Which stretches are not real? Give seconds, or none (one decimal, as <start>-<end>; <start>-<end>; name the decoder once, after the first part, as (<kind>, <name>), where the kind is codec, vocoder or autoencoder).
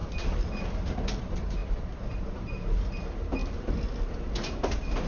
1.2-3.4 (vocoder, BigVGAN v2)